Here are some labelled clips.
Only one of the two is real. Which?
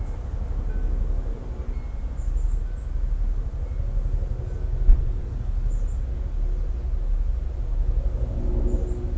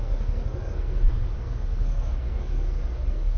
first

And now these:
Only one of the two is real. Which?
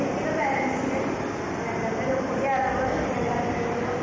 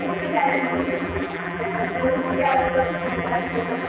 first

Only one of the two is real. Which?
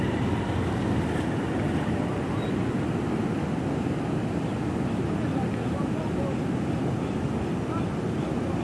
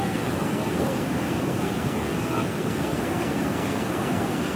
first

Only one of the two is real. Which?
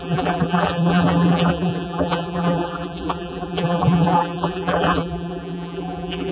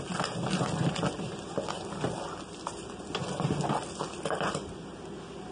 second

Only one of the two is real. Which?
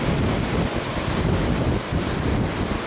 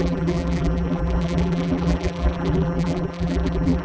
first